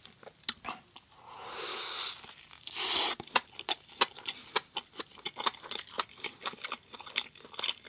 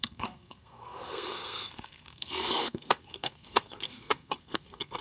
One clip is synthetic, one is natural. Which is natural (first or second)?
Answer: first